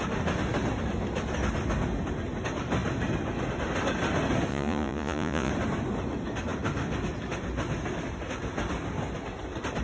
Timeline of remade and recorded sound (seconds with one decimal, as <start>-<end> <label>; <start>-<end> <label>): 0.0-4.5 recorded; 4.5-5.5 remade; 5.5-9.8 recorded